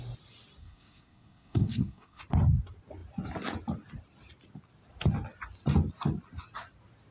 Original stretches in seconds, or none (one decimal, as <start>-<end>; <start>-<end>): 0.0-0.6; 2.2-7.1